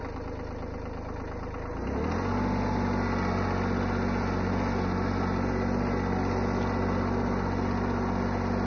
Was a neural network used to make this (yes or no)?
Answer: no